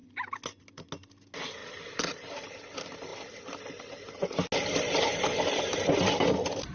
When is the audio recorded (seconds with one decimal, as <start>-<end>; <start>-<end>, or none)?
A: 0.0-6.7